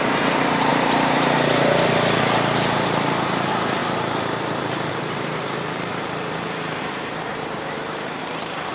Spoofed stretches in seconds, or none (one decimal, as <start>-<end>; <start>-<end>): 0.0-8.7